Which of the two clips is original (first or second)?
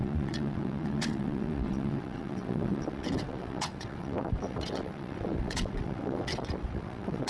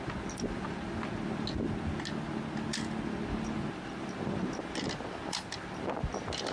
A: second